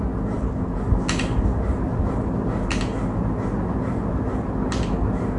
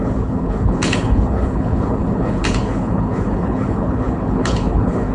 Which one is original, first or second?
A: first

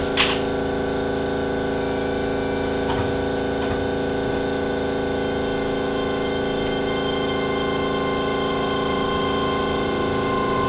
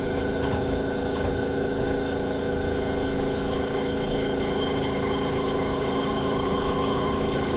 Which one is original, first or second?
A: first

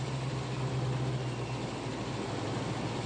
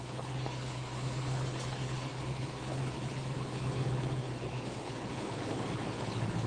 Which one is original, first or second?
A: first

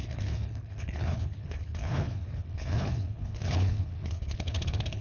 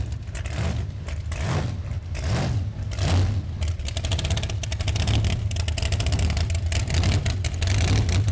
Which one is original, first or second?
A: second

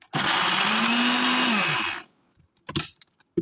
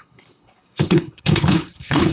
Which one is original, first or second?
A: first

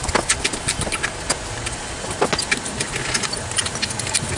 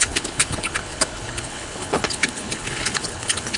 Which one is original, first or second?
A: first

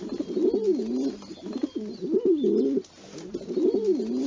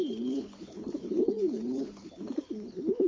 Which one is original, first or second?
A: first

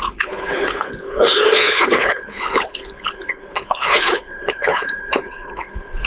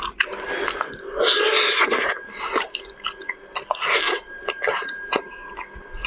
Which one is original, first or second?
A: second